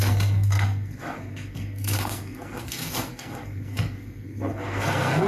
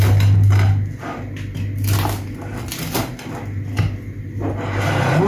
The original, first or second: second